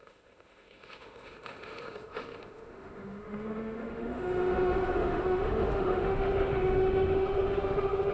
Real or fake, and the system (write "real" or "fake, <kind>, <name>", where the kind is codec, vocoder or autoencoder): fake, autoencoder, DAC-VAE